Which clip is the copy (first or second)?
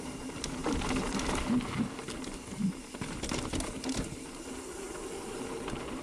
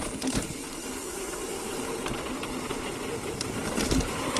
second